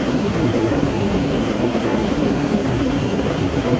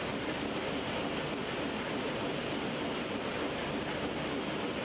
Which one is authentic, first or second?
second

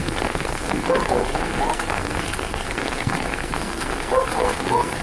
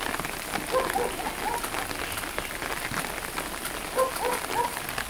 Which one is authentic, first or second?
second